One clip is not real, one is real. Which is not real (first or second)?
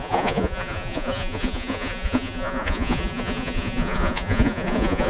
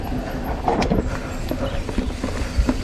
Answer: first